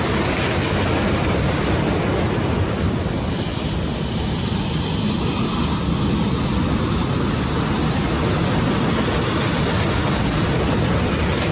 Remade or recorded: recorded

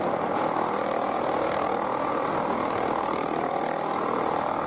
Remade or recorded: recorded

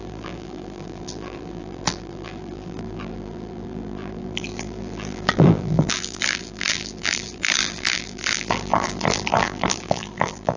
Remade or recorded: remade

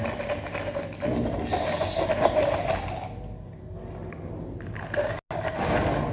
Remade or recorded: recorded